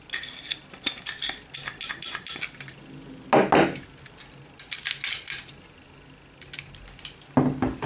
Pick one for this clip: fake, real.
real